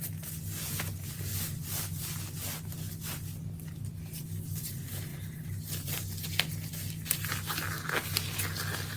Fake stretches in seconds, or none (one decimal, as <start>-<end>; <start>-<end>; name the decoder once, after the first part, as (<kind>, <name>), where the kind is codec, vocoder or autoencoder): none